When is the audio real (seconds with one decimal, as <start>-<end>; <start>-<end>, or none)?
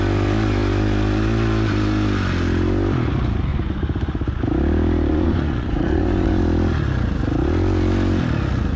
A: 0.0-3.5; 4.4-5.1; 6.4-8.8